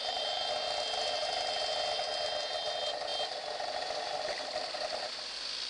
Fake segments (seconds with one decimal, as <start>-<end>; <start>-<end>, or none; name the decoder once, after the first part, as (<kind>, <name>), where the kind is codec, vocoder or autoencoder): 0.0-0.5 (vocoder, BigVGAN v2)